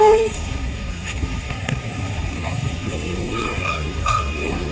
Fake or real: fake